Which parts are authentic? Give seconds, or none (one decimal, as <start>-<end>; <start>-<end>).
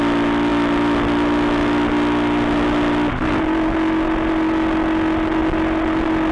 0.0-6.3